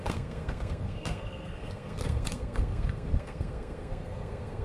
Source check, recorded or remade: remade